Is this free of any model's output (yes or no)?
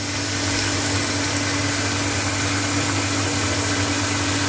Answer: yes